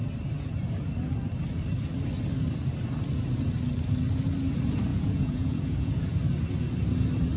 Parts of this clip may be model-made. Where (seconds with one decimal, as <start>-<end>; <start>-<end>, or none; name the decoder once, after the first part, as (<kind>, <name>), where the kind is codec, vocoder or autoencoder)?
4.9-6.0 (vocoder, Vocos)